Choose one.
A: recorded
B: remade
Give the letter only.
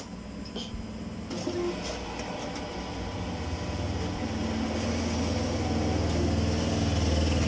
A